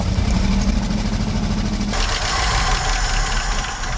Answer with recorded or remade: recorded